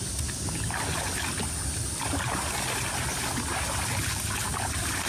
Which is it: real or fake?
real